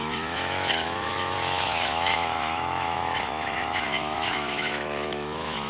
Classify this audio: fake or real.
fake